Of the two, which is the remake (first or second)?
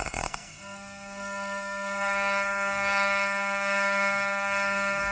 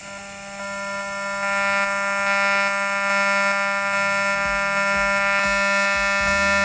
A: first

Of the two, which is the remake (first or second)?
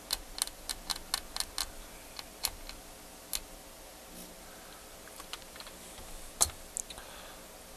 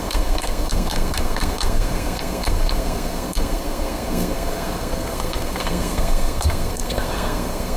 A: second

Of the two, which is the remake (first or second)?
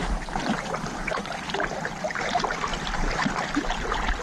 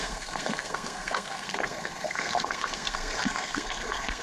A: second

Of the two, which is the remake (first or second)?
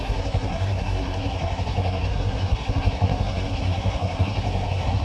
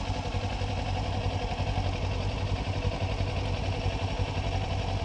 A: first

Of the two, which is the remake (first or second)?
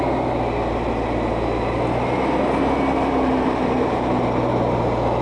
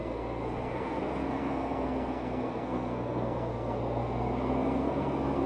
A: second